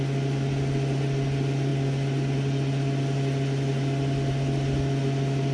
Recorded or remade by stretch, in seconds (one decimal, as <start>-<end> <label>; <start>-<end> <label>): 0.0-5.5 recorded